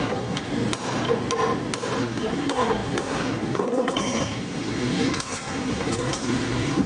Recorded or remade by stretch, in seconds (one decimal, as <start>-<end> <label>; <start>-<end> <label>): 0.0-0.5 remade; 0.5-2.0 recorded; 2.0-6.9 remade